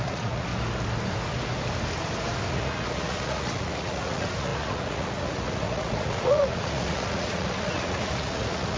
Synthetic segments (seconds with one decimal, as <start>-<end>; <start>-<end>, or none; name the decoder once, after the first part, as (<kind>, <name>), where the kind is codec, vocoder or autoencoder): 0.0-0.5 (vocoder, Vocos); 2.5-8.8